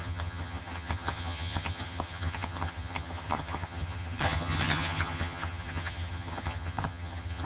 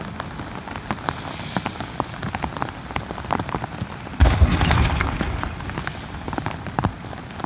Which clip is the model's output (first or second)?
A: first